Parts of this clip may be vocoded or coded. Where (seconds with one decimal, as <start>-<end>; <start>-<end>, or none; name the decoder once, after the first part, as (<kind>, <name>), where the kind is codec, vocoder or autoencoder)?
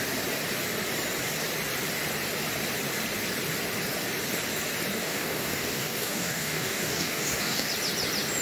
5.0-7.7 (codec, DAC)